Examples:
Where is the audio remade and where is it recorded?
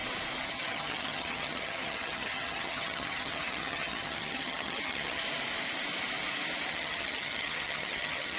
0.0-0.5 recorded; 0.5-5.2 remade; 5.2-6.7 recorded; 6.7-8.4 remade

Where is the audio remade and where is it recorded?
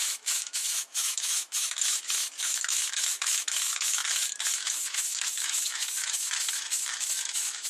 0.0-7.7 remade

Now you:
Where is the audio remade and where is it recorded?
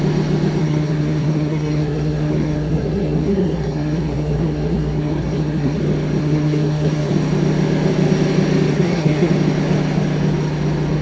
0.0-0.6 recorded; 0.6-5.8 remade; 5.8-6.2 recorded; 6.2-7.1 remade; 7.1-8.7 recorded; 8.7-9.3 remade; 9.3-11.0 recorded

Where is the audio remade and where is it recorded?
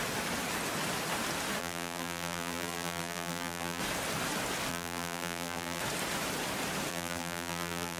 0.0-1.6 recorded; 1.6-3.8 remade; 3.8-4.7 recorded; 4.7-5.8 remade; 5.8-6.9 recorded; 6.9-8.0 remade